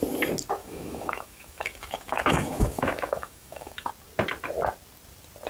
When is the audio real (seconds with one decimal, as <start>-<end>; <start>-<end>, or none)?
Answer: 0.0-0.6; 3.9-5.5